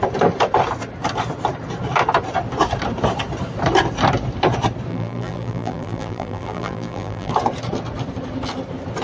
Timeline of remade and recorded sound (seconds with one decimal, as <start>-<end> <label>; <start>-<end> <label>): 0.0-4.9 recorded; 4.9-7.3 remade; 7.3-9.0 recorded